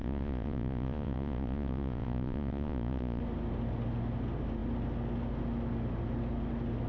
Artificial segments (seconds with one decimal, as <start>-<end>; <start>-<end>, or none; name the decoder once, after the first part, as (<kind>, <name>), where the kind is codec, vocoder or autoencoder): 0.0-3.2 (vocoder, Vocos)